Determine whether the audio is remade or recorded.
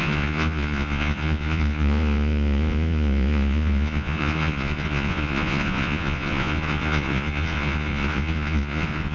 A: remade